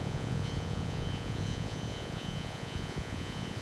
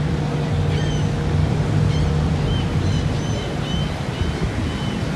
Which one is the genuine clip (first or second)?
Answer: second